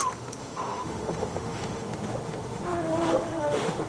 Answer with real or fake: fake